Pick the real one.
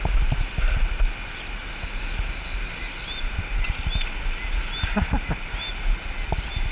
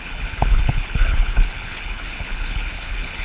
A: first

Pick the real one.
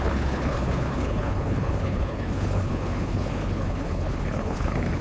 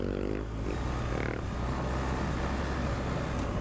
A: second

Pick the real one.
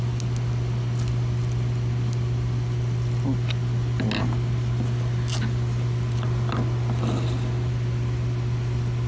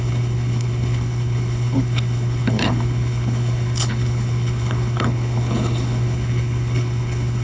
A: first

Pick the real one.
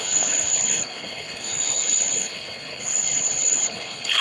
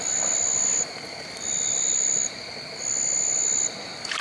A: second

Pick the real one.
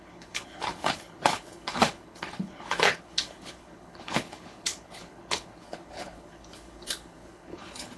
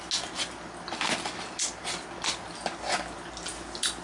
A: second